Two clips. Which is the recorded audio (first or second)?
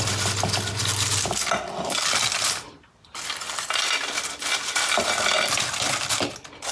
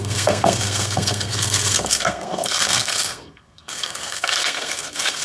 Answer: first